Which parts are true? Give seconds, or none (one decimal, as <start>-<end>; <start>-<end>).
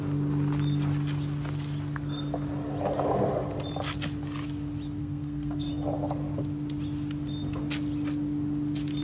0.0-5.0; 5.7-9.0